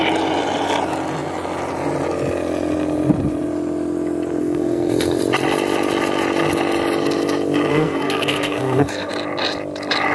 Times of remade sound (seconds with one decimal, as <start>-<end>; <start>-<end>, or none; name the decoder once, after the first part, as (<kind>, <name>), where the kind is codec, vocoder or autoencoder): 4.4-5.2 (codec, SNAC); 7.7-9.1

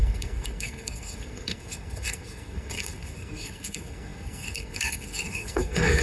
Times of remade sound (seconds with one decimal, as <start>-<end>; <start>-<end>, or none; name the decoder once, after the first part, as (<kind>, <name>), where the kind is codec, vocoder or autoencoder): 0.0-6.0 (codec, SNAC)

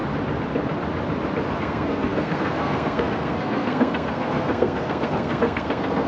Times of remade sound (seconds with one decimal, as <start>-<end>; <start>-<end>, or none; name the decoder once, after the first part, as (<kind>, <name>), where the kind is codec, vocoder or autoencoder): 1.6-6.1 (codec, SNAC)

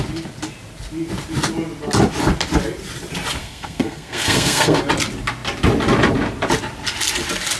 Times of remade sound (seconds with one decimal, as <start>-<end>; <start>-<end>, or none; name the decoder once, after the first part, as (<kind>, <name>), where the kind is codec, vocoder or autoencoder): 3.4-4.8 (codec, SNAC)

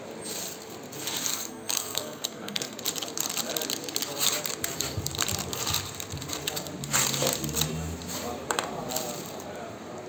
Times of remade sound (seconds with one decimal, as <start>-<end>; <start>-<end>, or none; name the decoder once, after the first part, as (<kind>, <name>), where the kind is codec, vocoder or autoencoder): 1.3-2.8 (codec, SNAC)

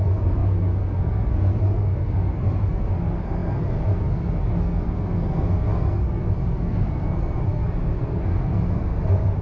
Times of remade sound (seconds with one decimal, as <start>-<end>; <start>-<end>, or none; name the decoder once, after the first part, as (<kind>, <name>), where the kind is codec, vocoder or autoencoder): 0.0-9.4 (codec, SNAC)